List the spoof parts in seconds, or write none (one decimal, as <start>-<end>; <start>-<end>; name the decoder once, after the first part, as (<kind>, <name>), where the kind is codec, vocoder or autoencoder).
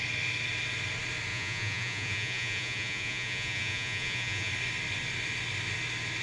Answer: 1.3-4.5 (vocoder, Vocos)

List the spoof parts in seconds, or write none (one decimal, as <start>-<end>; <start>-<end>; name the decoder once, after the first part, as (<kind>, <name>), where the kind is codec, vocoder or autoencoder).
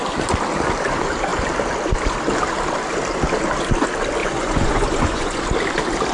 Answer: 4.2-5.4 (vocoder, Vocos)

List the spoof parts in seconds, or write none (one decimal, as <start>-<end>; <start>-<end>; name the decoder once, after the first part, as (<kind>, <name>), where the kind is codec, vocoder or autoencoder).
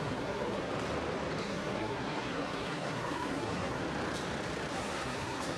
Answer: 0.0-0.7 (codec, SNAC); 1.4-3.8; 4.7-5.6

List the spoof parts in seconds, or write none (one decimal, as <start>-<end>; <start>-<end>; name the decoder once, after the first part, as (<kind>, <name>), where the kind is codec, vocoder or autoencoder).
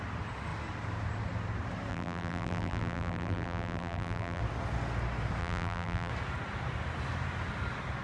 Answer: 1.9-4.4 (vocoder, BigVGAN v2); 5.4-6.1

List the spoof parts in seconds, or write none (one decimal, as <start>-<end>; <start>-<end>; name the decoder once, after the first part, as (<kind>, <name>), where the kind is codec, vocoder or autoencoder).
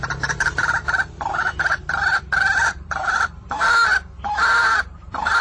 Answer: 0.0-3.8 (vocoder, BigVGAN v2); 5.0-5.4